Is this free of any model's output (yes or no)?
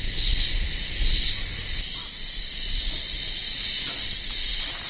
yes